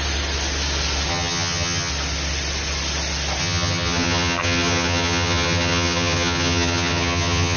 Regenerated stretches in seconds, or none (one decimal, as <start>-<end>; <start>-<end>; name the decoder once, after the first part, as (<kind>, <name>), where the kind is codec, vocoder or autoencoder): 1.1-1.9 (vocoder, HiFi-GAN); 3.4-7.6